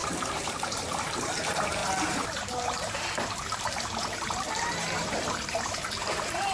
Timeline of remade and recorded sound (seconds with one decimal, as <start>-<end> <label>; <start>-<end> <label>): 0.0-6.5 remade